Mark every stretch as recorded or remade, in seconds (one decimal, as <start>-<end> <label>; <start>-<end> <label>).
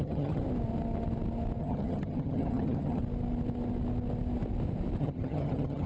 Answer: 0.0-0.4 remade; 0.4-1.6 recorded; 1.6-3.0 remade; 3.0-5.0 recorded; 5.0-5.9 remade